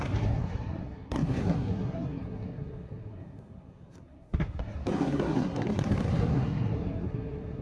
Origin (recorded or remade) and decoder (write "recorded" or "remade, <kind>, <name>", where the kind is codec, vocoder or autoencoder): remade, codec, SNAC